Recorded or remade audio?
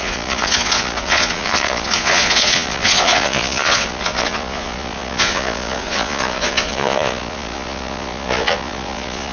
remade